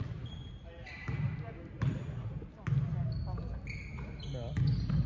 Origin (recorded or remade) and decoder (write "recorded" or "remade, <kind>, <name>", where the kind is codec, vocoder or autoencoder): recorded